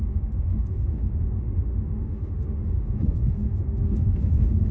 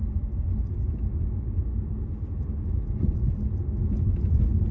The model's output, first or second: first